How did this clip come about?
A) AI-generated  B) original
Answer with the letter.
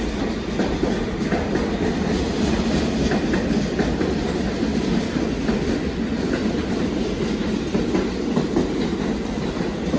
B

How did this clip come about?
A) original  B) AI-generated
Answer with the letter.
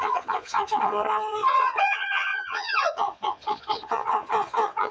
B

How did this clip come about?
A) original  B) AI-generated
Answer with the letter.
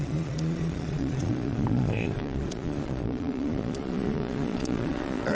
B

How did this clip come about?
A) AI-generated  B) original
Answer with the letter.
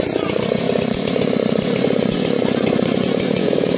A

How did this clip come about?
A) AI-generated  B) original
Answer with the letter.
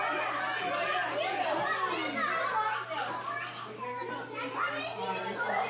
B